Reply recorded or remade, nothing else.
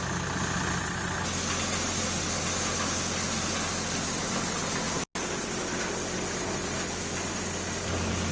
recorded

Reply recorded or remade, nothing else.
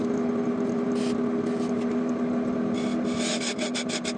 recorded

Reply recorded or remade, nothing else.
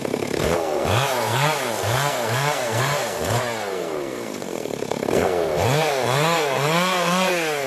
remade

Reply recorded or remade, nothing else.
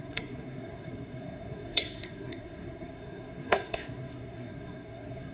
remade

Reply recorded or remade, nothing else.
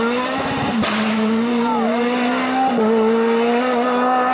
recorded